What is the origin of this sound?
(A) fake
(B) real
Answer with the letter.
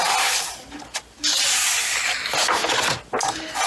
B